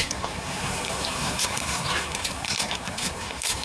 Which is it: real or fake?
fake